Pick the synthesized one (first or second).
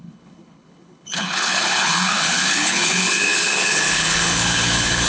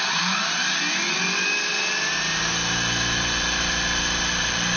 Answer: first